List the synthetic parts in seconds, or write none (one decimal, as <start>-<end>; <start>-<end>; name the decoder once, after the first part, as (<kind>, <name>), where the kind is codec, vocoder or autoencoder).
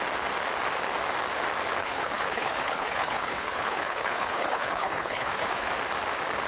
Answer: 1.8-5.7 (codec, HILCodec)